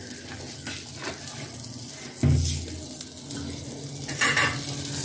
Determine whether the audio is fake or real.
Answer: real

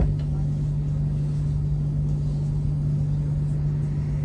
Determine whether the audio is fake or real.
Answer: real